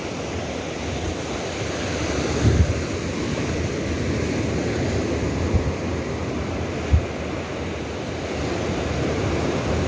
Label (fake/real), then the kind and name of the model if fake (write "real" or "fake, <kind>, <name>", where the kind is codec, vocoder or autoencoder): real